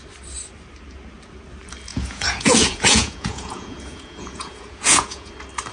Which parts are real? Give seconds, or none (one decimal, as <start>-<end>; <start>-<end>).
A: 0.0-1.9; 5.3-5.7